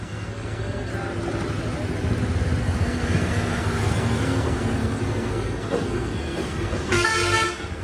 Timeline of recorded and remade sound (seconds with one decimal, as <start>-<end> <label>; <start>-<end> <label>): 0.0-0.9 remade; 0.9-2.6 recorded; 2.6-7.8 remade

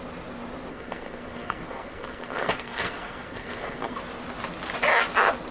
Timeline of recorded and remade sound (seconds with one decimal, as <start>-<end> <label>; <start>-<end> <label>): 0.0-0.7 recorded; 0.7-4.0 remade; 4.0-5.5 recorded

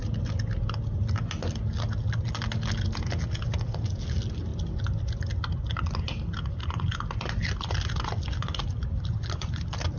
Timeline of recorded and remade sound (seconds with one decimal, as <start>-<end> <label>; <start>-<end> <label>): 0.0-10.0 recorded

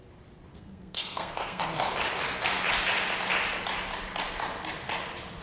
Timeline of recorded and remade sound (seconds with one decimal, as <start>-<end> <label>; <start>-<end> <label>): 0.0-0.5 recorded; 0.5-1.6 remade; 1.6-5.4 recorded

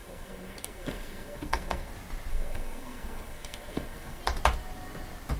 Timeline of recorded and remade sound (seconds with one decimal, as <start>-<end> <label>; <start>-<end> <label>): 0.0-1.9 remade; 1.9-2.3 recorded; 2.3-4.2 remade; 4.2-5.4 recorded

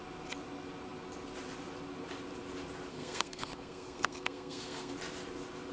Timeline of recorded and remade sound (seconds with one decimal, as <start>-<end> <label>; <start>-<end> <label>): 0.0-2.9 recorded; 2.9-4.9 remade; 4.9-5.7 recorded

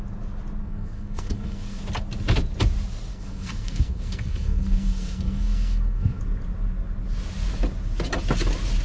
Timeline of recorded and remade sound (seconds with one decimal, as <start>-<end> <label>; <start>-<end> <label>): 0.0-0.6 recorded; 0.6-1.8 remade; 1.8-3.1 recorded; 3.1-6.2 remade; 6.2-8.8 recorded